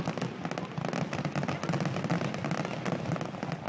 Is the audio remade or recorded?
recorded